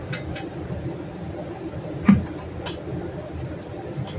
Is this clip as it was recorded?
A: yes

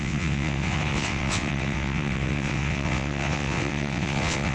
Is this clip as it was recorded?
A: no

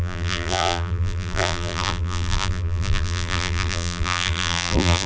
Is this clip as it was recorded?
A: no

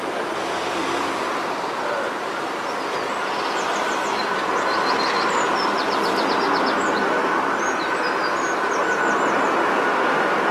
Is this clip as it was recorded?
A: yes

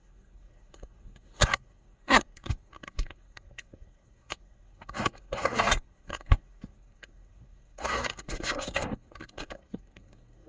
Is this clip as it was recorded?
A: no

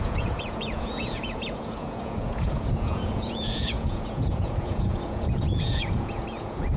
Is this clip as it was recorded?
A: no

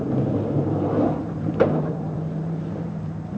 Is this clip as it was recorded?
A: no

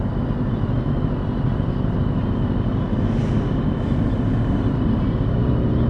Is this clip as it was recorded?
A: yes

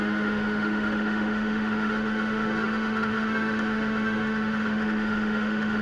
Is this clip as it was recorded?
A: no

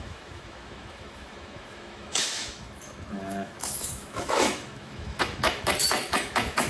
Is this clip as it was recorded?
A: no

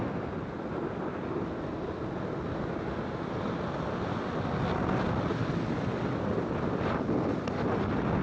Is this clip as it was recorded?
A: yes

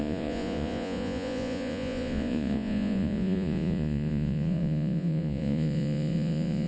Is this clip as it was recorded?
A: no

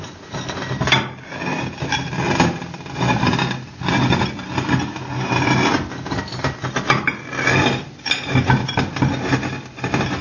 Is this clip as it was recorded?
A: yes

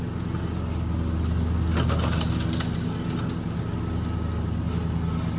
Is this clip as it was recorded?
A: yes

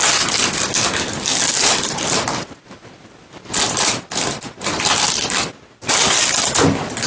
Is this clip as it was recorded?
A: yes